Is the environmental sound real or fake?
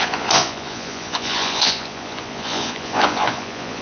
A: fake